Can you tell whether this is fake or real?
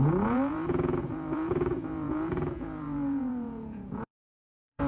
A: fake